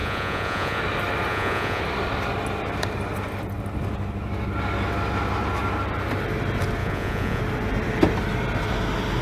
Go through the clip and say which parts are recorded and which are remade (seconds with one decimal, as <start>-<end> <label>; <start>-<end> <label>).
0.0-0.8 remade; 0.8-1.3 recorded; 1.3-1.8 remade; 1.8-6.8 recorded; 6.8-7.4 remade; 7.4-9.2 recorded